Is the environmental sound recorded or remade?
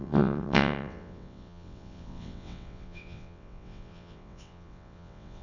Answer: remade